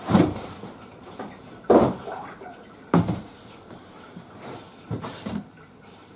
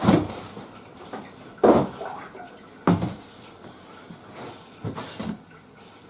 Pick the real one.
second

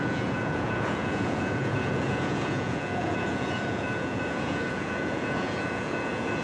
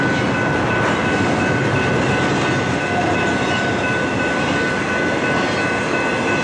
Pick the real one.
second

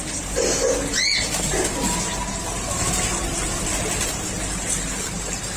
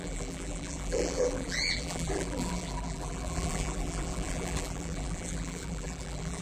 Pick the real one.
first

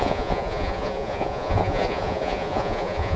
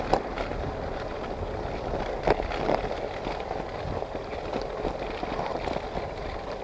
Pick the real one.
second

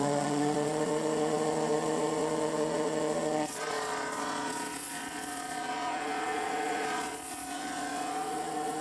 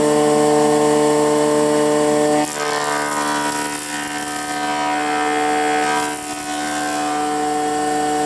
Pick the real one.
second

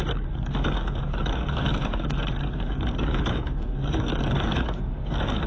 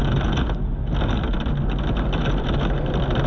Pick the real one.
second